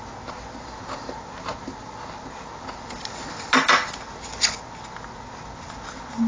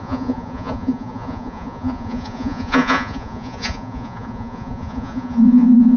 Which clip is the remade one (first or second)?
second